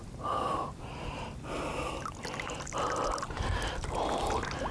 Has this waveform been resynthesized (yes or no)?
no